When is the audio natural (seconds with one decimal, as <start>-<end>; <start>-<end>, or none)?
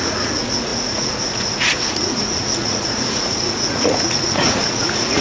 none